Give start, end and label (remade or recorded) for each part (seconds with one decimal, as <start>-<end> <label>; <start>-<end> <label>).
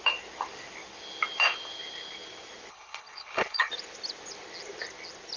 0.0-2.7 recorded; 2.7-3.7 remade; 3.7-5.4 recorded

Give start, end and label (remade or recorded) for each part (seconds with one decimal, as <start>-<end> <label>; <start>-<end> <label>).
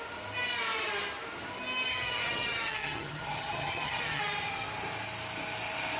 0.0-1.9 recorded; 1.9-4.2 remade; 4.2-6.0 recorded